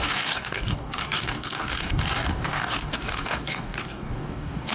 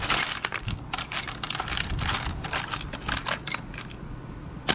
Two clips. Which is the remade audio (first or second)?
first